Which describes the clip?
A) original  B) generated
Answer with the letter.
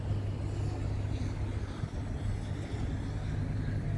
A